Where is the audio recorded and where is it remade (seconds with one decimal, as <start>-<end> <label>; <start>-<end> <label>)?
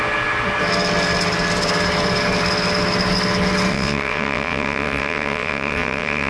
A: 0.0-3.7 recorded; 3.7-6.3 remade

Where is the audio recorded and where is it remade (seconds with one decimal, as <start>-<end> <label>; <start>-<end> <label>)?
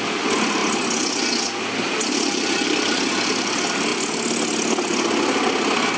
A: 0.0-6.0 recorded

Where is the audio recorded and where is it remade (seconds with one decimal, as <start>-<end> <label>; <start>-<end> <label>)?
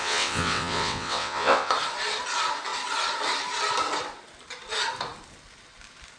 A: 0.0-1.7 remade; 1.7-6.2 recorded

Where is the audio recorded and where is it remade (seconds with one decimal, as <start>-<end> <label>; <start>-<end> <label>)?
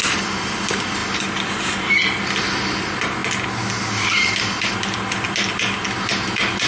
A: 0.0-6.7 recorded